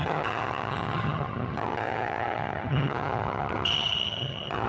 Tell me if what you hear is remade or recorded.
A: remade